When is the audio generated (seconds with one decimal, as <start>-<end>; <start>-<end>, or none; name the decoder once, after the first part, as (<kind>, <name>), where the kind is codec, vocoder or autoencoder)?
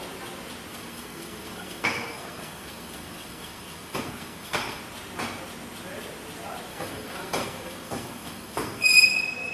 0.7-4.8 (codec, SNAC); 6.7-8.9